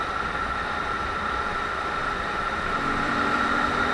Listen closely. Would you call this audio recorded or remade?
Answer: remade